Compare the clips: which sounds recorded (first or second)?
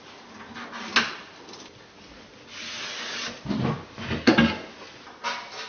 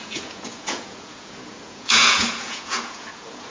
first